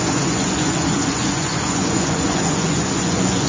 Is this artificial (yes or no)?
yes